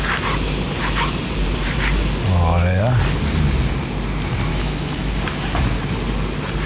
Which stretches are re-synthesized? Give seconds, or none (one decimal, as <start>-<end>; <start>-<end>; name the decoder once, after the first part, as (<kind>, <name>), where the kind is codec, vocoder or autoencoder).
4.5-5.1 (autoencoder, DAC-VAE)